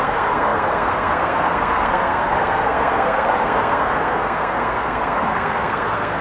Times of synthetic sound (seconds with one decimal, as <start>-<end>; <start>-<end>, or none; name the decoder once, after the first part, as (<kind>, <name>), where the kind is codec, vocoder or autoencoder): 0.0-6.2 (codec, SNAC)